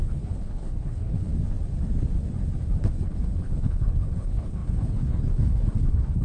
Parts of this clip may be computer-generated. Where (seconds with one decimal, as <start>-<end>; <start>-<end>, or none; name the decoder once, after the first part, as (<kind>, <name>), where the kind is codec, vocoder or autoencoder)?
0.0-1.3 (codec, HILCodec); 2.8-6.2